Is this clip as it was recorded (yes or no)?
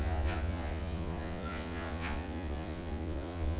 no